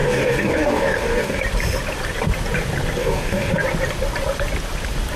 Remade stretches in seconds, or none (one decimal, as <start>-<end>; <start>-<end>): 0.0-1.4; 3.0-3.5